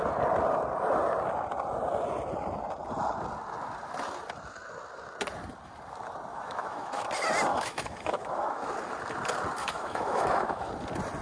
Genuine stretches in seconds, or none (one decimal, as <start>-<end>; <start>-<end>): 0.0-6.3; 7.1-7.5; 8.7-9.6; 10.7-11.2